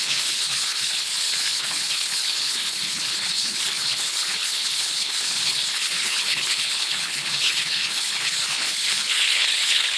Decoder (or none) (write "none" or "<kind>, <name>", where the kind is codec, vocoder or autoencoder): codec, HILCodec